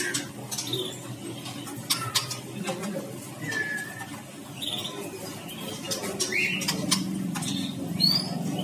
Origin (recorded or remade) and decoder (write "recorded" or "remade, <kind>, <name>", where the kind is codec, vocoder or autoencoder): recorded